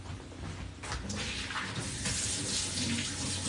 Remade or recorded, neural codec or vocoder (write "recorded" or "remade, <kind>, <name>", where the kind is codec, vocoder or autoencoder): recorded